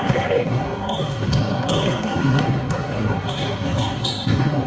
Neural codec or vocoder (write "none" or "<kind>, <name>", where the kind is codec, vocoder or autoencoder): codec, SNAC